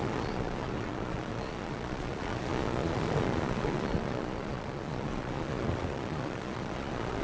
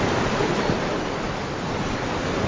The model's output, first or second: first